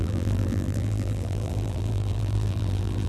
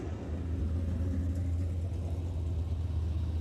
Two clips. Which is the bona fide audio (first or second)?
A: second